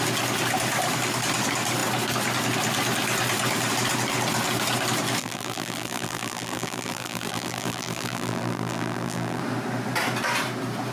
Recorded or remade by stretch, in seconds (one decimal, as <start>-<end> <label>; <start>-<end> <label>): 0.0-5.2 recorded; 5.2-9.4 remade; 9.4-10.9 recorded